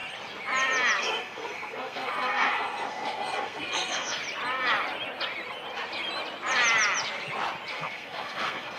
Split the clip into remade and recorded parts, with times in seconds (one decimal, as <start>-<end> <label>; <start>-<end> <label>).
0.0-1.0 recorded; 1.0-4.2 remade; 4.2-7.7 recorded; 7.7-8.8 remade